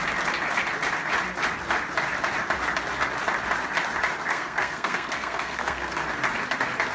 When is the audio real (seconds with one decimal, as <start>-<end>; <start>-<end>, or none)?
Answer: 0.0-4.3; 6.0-6.9